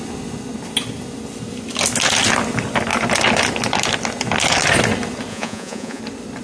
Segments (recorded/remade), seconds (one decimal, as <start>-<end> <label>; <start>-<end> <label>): 0.0-5.3 recorded; 5.3-6.0 remade; 6.0-6.4 recorded